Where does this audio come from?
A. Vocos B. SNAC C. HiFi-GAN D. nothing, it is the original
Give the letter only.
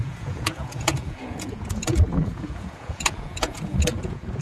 A